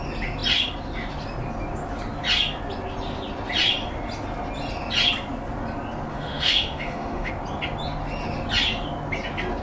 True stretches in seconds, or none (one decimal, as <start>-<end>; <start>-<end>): 0.0-6.1; 7.3-9.6